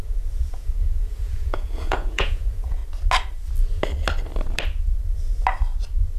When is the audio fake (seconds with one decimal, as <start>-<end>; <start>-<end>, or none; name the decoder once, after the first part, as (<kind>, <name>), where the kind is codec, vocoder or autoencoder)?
0.0-2.8 (vocoder, Vocos)